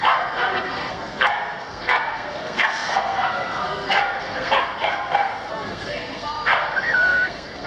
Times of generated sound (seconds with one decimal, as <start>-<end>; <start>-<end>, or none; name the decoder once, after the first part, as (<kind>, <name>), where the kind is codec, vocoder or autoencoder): 0.0-7.7 (codec, SNAC)